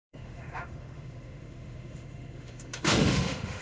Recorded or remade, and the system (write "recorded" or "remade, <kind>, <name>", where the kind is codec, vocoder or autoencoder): remade, autoencoder, DAC-VAE